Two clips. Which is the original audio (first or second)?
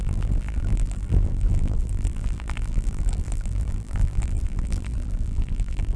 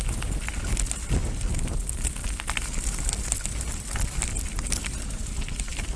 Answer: second